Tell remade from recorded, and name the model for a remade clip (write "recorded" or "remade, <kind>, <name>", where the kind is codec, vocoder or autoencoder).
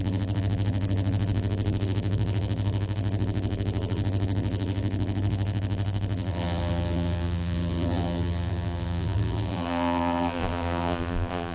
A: remade, vocoder, BigVGAN v2